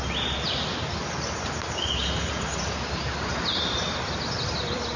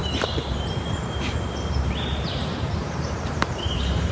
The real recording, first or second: first